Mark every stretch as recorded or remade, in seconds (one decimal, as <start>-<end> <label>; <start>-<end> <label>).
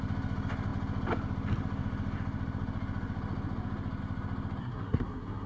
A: 0.0-4.6 recorded; 4.6-5.5 remade